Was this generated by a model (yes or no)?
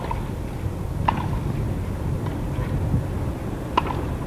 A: no